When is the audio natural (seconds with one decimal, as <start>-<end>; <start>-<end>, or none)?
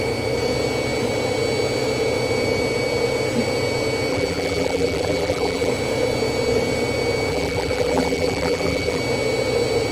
0.0-4.1; 5.7-7.3; 9.0-9.9